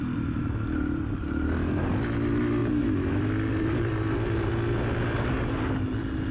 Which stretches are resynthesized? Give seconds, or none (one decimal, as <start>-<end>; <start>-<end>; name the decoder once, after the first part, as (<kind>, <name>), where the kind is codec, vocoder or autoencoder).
none